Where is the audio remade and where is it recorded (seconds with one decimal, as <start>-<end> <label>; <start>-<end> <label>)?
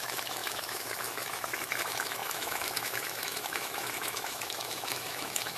0.0-5.6 remade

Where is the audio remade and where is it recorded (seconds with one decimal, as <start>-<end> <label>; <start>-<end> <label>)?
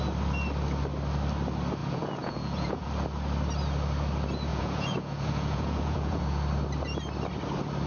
0.0-1.8 recorded; 1.8-2.9 remade; 2.9-4.5 recorded; 4.5-6.2 remade; 6.2-7.9 recorded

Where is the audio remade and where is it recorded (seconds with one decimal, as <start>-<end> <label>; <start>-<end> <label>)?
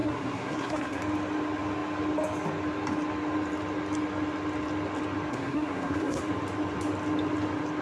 0.0-1.0 remade; 1.0-5.3 recorded; 5.3-6.2 remade; 6.2-7.8 recorded